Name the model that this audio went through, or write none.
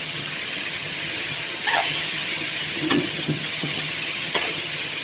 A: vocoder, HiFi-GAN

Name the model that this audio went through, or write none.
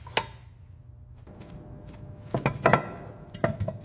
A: none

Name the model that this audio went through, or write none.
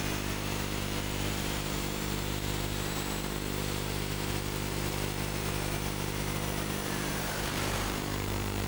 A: vocoder, BigVGAN v2